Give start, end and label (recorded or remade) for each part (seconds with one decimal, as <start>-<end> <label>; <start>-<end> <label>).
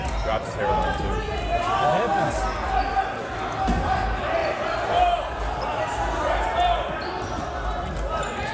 0.0-0.7 remade; 0.7-4.4 recorded; 4.4-6.3 remade; 6.3-8.5 recorded